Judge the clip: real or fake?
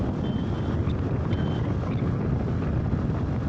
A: real